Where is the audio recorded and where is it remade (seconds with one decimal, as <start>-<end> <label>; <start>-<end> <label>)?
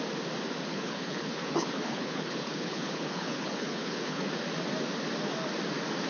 0.0-0.7 recorded; 0.7-4.3 remade; 4.3-6.1 recorded